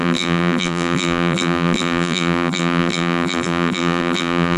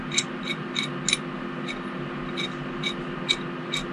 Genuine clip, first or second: second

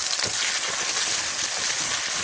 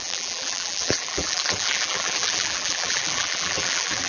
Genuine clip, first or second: first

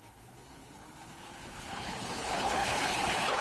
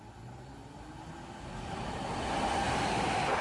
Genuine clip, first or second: second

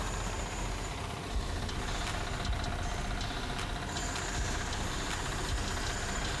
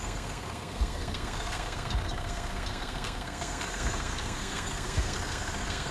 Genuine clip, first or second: first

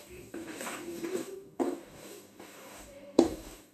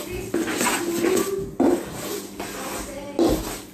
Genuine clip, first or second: second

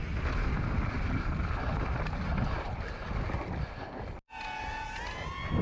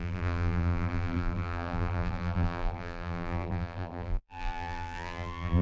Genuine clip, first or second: first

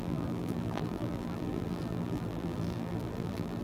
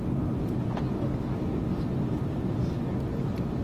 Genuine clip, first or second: second